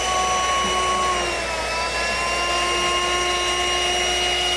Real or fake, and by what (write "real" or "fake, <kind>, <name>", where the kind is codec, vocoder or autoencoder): real